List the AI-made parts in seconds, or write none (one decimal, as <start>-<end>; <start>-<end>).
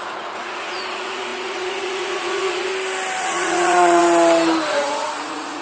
0.0-2.7; 3.2-4.0; 4.7-5.6